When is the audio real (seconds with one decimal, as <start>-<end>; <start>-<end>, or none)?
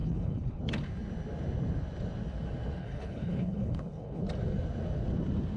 0.6-2.8; 4.2-5.6